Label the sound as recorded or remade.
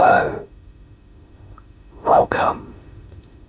remade